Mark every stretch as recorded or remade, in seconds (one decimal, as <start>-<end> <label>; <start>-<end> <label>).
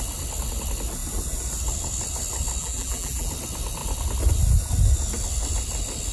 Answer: 0.0-2.6 recorded; 2.6-3.3 remade; 3.3-6.1 recorded